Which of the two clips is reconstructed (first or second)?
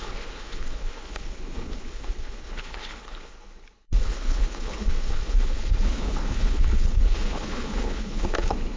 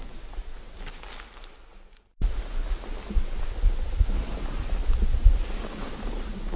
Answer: first